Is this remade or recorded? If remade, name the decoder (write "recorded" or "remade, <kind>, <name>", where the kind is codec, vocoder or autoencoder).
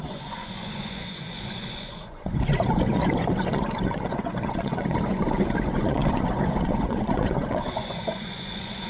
remade, vocoder, Vocos